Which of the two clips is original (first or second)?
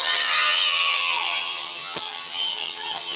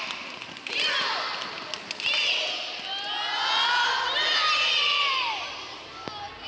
second